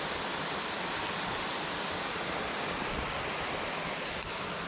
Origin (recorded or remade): recorded